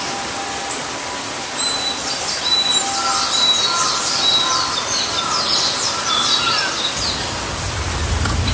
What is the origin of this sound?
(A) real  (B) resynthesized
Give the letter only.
A